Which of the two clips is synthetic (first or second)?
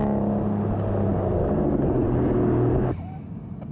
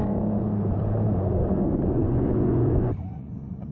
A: second